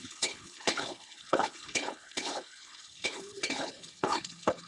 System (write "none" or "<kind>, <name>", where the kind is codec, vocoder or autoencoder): codec, HILCodec